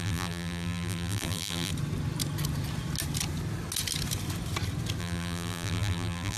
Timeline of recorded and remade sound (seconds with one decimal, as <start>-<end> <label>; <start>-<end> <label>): 0.0-1.7 remade; 1.7-5.0 recorded; 5.0-6.4 remade